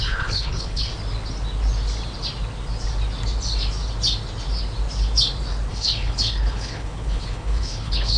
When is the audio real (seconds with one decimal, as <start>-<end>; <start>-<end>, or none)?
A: 0.9-5.7